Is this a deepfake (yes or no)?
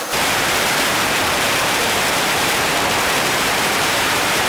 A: yes